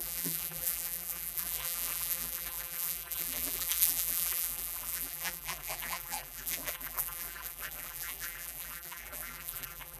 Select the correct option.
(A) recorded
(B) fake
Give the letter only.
B